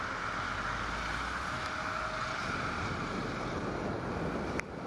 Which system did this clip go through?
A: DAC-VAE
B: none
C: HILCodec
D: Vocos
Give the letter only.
B